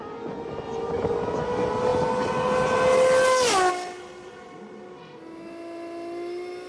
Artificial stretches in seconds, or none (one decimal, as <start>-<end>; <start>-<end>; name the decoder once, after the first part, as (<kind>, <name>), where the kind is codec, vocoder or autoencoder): none